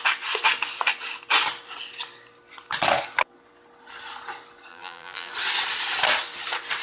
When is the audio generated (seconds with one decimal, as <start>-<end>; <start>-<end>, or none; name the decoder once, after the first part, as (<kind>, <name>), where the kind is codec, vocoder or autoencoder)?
4.7-5.3 (vocoder, BigVGAN v2)

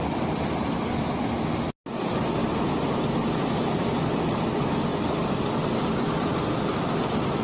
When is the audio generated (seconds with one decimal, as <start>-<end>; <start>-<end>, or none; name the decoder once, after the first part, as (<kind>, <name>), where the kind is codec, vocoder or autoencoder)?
2.4-3.0 (vocoder, BigVGAN v2)

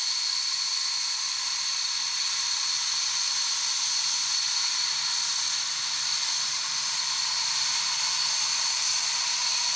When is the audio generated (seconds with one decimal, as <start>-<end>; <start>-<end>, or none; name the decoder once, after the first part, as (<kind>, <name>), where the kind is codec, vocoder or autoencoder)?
none

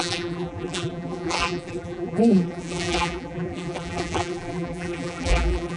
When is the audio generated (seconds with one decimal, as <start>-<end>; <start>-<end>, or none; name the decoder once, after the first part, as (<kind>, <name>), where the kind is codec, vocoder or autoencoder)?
0.0-5.8 (vocoder, BigVGAN v2)

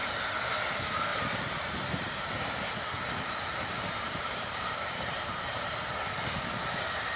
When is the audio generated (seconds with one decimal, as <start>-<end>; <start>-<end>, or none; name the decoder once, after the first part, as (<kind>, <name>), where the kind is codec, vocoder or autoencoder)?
0.7-7.2 (vocoder, BigVGAN v2)